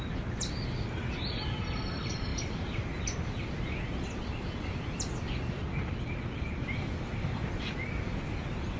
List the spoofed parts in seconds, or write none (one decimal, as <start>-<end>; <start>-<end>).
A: none